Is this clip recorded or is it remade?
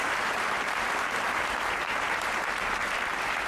remade